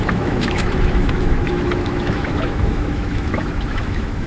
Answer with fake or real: fake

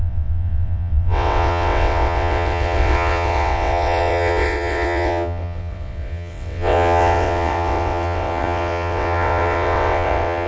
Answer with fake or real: fake